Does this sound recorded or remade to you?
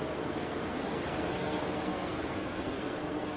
remade